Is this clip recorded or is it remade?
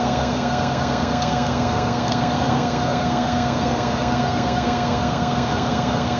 remade